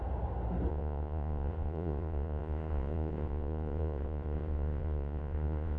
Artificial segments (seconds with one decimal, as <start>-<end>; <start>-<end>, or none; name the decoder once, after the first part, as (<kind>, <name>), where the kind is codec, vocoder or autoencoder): 0.7-5.8 (vocoder, Vocos)